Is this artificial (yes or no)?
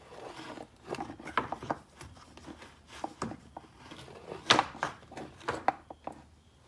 no